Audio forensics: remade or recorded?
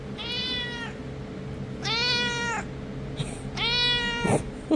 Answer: recorded